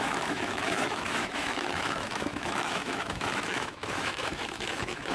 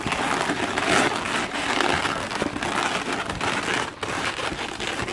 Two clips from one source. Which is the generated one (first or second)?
first